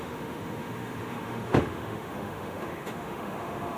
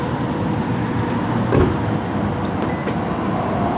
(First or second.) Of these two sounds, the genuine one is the second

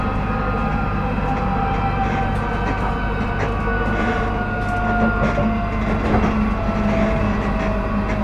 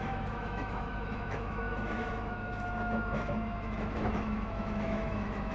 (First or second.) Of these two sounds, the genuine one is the first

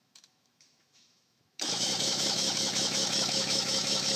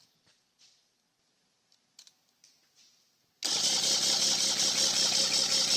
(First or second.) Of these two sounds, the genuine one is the second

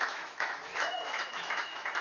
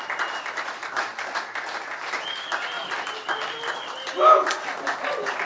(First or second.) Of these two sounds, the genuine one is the second